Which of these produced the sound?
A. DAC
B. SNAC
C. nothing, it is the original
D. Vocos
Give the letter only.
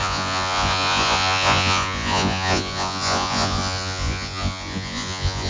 D